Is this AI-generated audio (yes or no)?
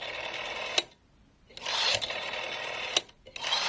no